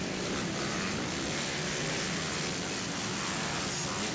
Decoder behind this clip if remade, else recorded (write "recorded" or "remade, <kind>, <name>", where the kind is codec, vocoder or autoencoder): recorded